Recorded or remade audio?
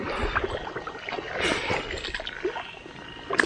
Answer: recorded